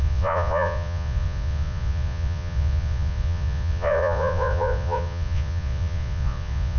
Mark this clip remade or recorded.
remade